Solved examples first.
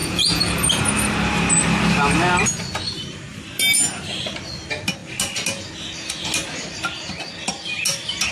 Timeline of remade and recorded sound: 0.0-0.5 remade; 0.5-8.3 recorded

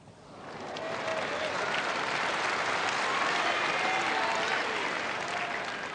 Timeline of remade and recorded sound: 0.0-5.9 recorded

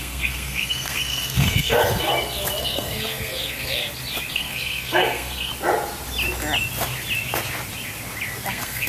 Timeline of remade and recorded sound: 0.0-1.8 remade; 1.8-2.6 recorded; 2.6-3.8 remade; 3.8-4.3 recorded; 4.3-5.5 remade; 5.5-8.5 recorded; 8.5-8.9 remade

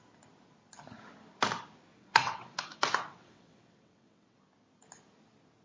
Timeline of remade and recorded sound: 0.0-1.9 recorded; 1.9-4.4 remade; 4.4-5.6 recorded

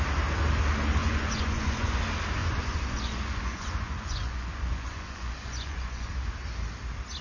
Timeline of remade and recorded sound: 0.0-1.0 recorded; 1.0-2.0 remade; 2.0-2.4 recorded; 2.4-6.1 remade; 6.1-7.2 recorded